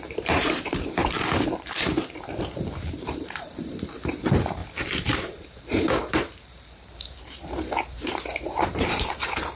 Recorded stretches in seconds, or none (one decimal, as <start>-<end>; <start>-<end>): 4.6-5.1